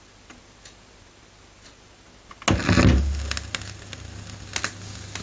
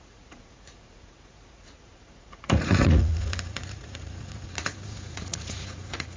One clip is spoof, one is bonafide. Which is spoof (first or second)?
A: second